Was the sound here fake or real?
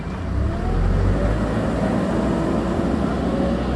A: real